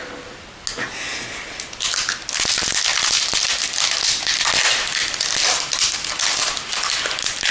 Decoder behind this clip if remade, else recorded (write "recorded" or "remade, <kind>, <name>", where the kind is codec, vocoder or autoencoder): recorded